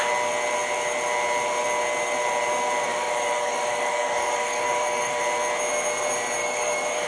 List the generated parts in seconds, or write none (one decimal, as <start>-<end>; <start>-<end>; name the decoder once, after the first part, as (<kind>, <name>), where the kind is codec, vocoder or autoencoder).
2.9-5.2 (codec, DAC); 6.4-7.1